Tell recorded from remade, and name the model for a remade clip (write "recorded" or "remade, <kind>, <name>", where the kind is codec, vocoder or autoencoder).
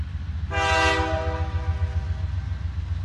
recorded